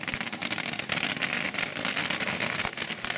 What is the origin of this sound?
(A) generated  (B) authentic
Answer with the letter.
B